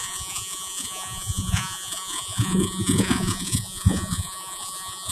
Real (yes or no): no